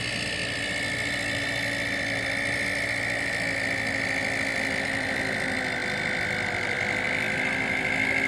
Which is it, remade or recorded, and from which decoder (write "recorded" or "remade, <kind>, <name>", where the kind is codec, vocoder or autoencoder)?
recorded